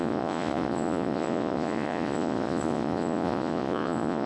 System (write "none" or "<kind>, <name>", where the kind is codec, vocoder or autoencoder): vocoder, Vocos